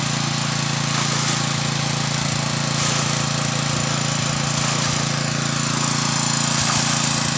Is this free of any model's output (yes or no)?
yes